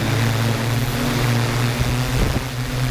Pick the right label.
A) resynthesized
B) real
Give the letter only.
B